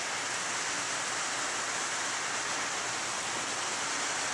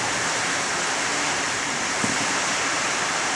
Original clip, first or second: first